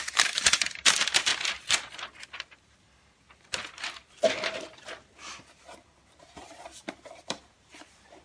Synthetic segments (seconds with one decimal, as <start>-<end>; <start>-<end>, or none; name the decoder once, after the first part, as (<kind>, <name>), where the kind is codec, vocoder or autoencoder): 0.0-1.3 (vocoder, BigVGAN v2); 6.2-8.2